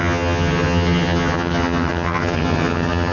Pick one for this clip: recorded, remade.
remade